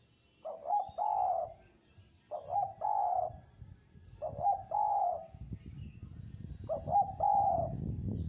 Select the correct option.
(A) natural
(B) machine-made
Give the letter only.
A